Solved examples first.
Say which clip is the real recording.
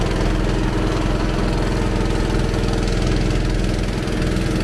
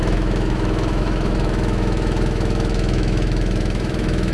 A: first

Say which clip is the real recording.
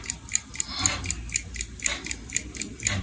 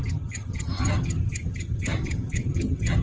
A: first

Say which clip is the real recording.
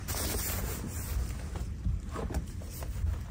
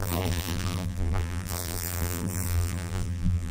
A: first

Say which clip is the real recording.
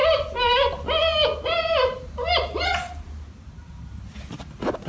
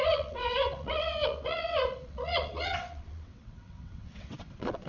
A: first